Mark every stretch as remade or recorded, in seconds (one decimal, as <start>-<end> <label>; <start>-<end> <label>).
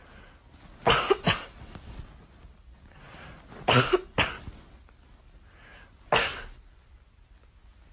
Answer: 0.0-7.9 recorded